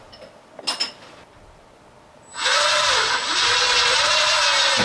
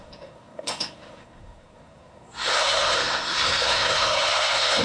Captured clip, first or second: first